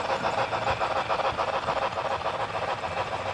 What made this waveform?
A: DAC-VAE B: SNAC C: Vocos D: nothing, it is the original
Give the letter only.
D